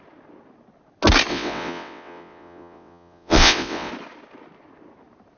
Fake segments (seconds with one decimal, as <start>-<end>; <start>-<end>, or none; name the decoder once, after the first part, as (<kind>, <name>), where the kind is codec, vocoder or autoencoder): 1.3-3.9 (vocoder, WaveNeXt)